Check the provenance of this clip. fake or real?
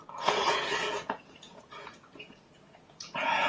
fake